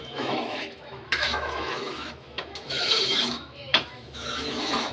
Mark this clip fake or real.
fake